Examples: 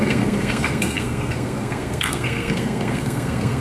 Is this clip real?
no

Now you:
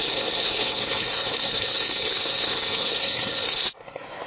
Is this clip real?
no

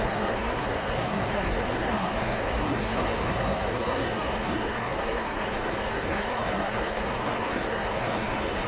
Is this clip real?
no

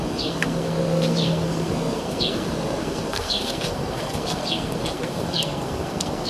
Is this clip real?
no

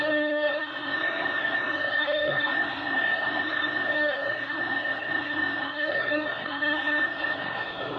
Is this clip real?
no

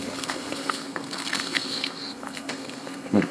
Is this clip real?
no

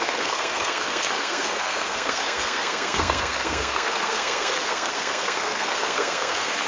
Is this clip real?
no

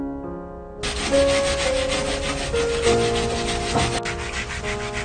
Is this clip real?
yes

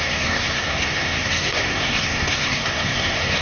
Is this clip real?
no